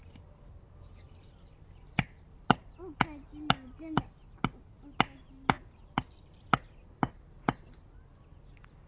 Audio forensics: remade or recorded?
recorded